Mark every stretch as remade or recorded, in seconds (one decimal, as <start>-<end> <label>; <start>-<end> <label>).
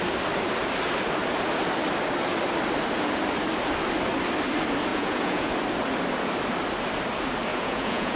0.0-4.9 recorded; 4.9-5.5 remade; 5.5-7.5 recorded; 7.5-8.2 remade